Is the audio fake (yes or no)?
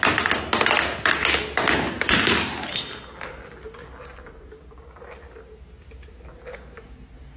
no